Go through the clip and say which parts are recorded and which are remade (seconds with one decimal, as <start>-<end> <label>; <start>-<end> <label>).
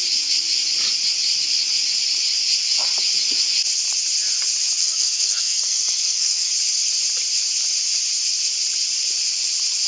0.0-4.8 recorded; 4.8-6.5 remade; 6.5-9.9 recorded